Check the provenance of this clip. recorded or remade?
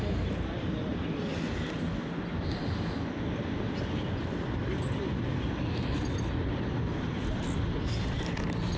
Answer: recorded